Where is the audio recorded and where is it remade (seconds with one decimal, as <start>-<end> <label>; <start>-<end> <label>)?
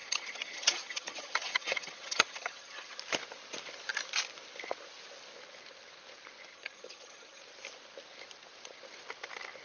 0.0-3.0 remade; 3.0-6.5 recorded; 6.5-7.4 remade; 7.4-9.6 recorded